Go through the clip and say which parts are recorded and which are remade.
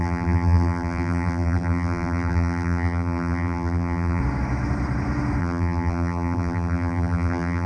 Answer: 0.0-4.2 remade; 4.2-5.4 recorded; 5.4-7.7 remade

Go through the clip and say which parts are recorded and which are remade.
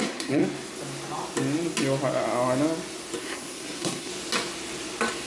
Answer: 0.0-0.4 remade; 0.4-3.2 recorded; 3.2-4.1 remade; 4.1-5.3 recorded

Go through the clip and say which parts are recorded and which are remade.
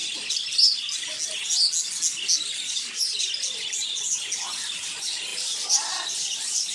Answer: 0.0-5.3 recorded; 5.3-6.7 remade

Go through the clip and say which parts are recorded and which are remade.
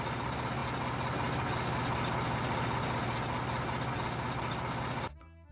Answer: 0.0-5.5 recorded